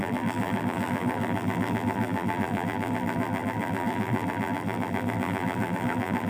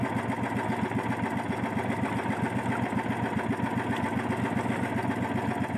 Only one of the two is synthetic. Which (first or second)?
first